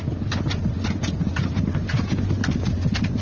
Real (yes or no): yes